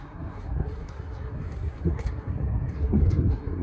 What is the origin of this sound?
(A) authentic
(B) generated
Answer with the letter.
B